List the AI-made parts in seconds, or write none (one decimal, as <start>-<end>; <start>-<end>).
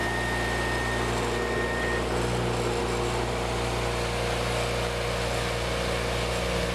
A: none